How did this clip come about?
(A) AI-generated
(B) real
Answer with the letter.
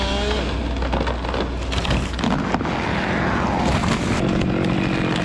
B